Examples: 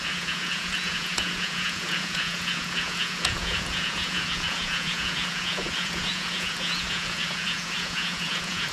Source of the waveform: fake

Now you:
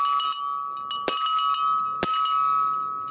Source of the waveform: real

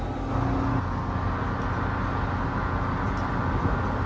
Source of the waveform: real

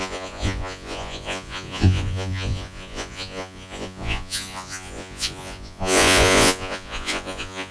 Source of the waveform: fake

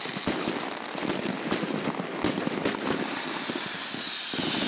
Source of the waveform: real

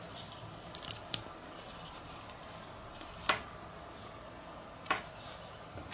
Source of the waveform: real